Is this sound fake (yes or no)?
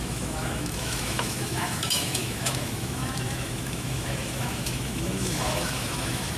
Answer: yes